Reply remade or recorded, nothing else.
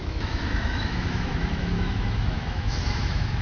remade